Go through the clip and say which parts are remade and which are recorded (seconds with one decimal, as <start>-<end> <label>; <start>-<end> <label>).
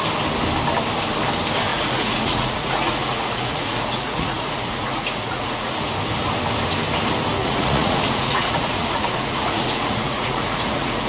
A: 0.0-1.7 recorded; 1.7-5.7 remade; 5.7-7.4 recorded; 7.4-11.1 remade